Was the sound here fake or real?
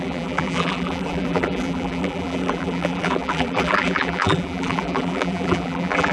fake